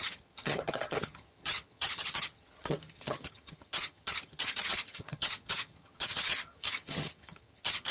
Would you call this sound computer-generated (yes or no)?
yes